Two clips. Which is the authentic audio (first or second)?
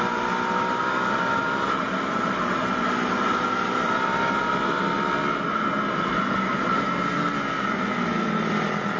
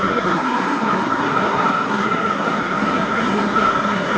first